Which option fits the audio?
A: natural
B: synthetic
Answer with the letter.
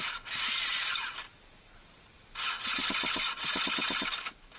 A